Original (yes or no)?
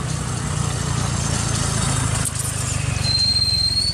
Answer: yes